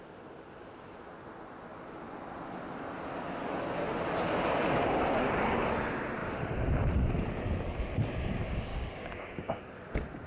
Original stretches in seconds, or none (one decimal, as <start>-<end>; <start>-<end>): 0.0-8.7; 9.6-10.3